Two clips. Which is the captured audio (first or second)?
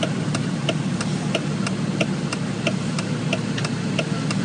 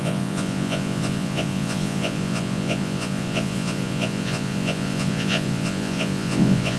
first